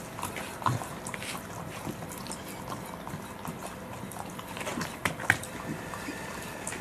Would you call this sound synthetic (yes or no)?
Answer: no